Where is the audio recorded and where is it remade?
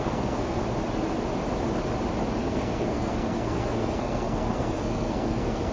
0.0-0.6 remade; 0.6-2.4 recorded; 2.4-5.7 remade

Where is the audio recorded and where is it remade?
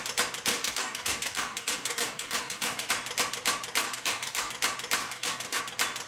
0.0-0.5 recorded; 0.5-2.9 remade; 2.9-3.8 recorded; 3.8-4.5 remade; 4.5-5.0 recorded; 5.0-5.6 remade; 5.6-6.1 recorded